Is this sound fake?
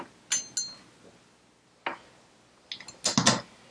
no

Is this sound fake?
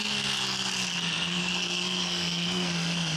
yes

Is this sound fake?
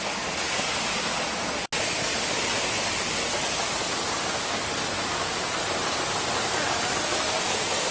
no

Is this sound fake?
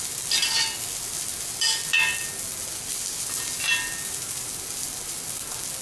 no